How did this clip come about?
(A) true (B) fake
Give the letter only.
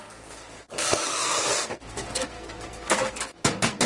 B